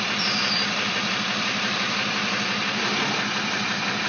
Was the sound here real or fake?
real